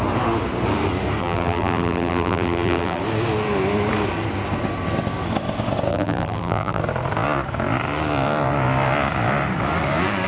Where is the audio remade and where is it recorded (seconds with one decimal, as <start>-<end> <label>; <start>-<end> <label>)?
0.0-1.2 recorded; 1.2-3.0 remade; 3.0-5.9 recorded; 5.9-6.8 remade; 6.8-10.3 recorded